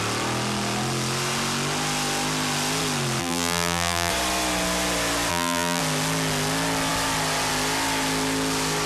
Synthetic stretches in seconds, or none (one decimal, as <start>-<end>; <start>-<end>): 3.2-4.1; 5.3-5.8